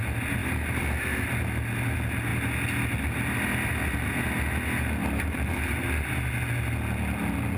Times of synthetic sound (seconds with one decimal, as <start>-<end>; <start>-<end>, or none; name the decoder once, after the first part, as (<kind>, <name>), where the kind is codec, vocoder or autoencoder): 0.4-1.3 (vocoder, BigVGAN v2); 5.0-5.7